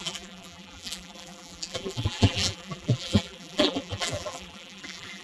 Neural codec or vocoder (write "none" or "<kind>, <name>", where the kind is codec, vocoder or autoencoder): vocoder, BigVGAN v2